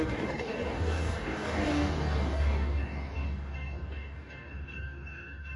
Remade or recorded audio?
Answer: remade